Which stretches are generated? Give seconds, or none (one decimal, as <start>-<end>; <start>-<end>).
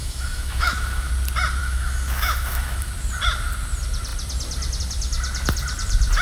0.0-1.1; 1.6-2.9